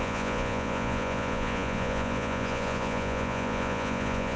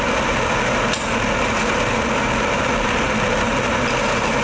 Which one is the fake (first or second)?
first